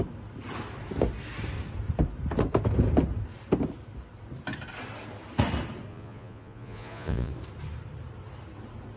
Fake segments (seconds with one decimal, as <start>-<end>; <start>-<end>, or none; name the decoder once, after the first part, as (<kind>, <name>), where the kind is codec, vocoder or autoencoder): 5.9-7.3 (vocoder, Vocos)